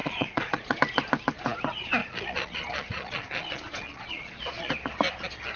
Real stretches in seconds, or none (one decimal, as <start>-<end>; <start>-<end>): 0.8-2.0; 4.7-5.6